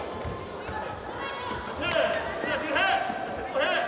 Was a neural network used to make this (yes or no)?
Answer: no